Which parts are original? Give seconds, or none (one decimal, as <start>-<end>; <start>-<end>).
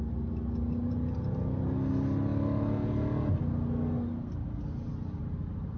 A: 0.0-5.8